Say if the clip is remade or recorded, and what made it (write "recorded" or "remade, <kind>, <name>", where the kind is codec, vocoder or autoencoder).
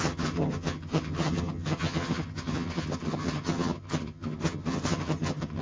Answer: remade, vocoder, HiFi-GAN